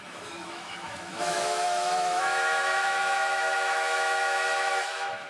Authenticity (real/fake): fake